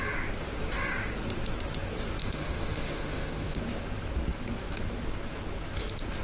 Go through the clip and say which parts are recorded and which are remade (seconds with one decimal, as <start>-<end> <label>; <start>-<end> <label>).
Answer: 0.0-2.2 recorded; 2.2-3.6 remade; 3.6-6.2 recorded